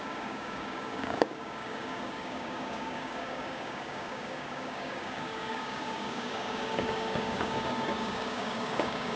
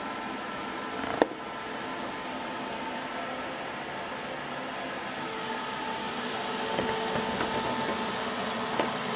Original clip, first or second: second